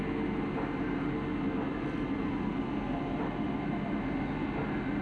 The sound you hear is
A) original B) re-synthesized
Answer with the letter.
A